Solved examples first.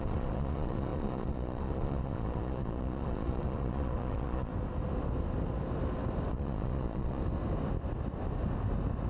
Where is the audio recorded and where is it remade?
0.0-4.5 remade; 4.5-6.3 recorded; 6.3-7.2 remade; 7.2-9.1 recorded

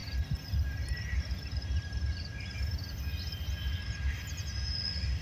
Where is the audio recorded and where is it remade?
0.0-2.2 remade; 2.2-5.2 recorded

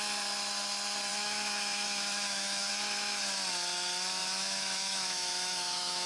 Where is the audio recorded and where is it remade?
0.0-1.1 recorded; 1.1-2.7 remade; 2.7-4.2 recorded; 4.2-6.1 remade